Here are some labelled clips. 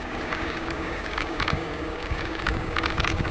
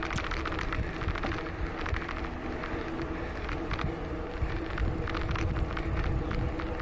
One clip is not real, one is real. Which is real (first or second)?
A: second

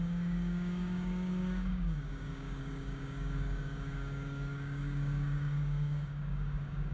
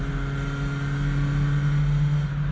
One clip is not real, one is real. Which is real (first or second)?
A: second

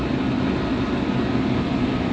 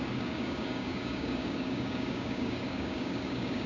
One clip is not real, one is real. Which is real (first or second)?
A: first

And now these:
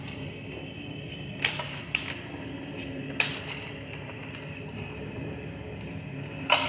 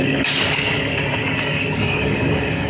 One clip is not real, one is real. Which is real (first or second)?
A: first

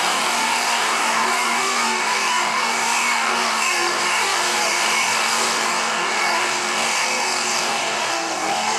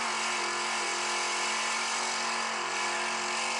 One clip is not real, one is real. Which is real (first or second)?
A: second